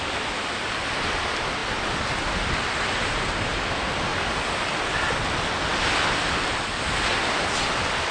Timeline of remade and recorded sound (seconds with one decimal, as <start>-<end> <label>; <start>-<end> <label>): 0.0-4.1 recorded; 4.1-4.8 remade; 4.8-8.1 recorded